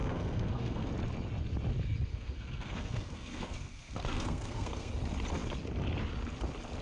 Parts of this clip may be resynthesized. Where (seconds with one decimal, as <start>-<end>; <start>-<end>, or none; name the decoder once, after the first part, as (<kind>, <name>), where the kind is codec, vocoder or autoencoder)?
0.0-0.9 (codec, SNAC); 2.1-4.9